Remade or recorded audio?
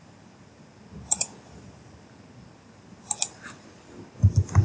recorded